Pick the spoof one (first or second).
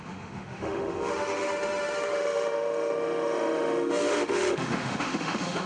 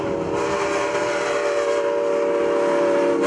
first